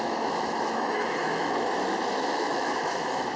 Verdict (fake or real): fake